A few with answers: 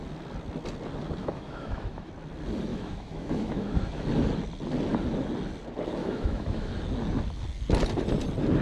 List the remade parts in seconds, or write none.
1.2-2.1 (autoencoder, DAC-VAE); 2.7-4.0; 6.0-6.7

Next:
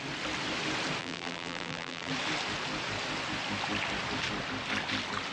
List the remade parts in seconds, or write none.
1.0-2.1 (vocoder, BigVGAN v2)